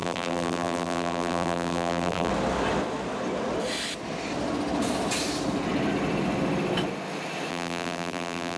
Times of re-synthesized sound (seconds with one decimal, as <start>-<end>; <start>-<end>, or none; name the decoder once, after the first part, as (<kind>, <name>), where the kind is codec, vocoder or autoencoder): 0.0-2.3 (vocoder, BigVGAN v2); 7.5-8.6